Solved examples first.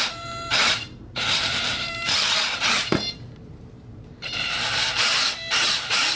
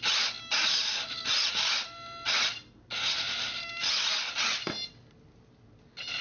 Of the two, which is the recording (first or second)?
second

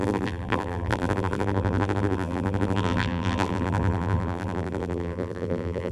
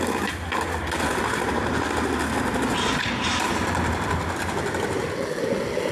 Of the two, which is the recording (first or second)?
second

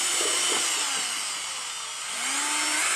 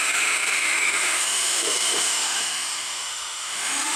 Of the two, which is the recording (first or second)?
first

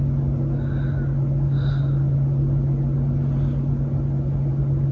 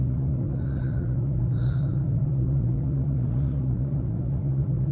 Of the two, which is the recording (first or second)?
first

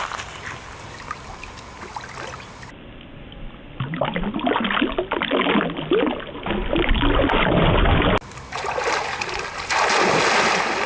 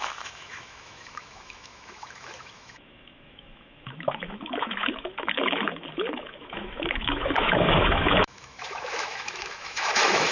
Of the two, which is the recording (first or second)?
first